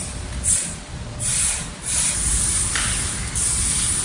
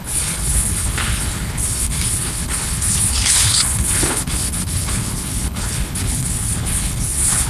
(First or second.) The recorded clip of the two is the first